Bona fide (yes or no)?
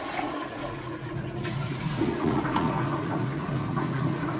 no